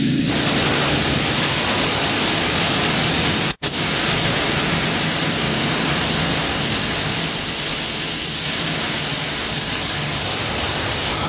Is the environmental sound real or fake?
real